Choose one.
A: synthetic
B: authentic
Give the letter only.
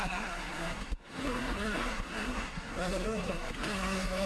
A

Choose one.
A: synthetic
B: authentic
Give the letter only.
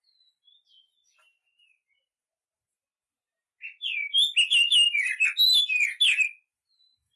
B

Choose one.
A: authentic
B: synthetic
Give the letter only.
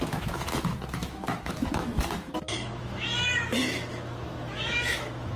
B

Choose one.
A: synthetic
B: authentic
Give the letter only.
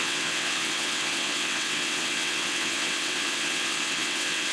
A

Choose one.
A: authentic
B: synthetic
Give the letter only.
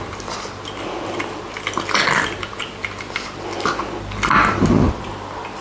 A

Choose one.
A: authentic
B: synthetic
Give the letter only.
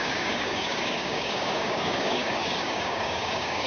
B